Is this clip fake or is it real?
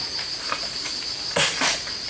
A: real